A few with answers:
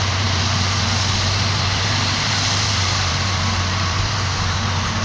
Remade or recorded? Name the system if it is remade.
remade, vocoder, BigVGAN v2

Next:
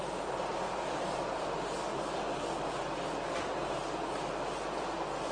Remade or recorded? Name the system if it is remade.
recorded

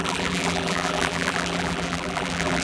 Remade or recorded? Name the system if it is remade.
remade, vocoder, BigVGAN v2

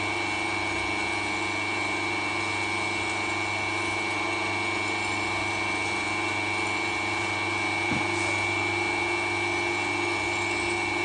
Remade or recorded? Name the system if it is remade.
recorded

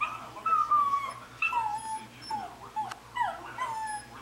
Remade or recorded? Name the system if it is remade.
recorded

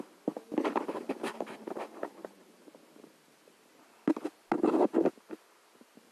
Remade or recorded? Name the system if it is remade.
recorded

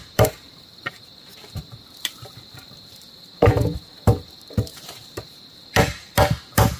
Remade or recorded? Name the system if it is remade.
remade, vocoder, BigVGAN v2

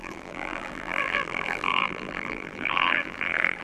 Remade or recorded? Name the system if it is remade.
remade, vocoder, BigVGAN v2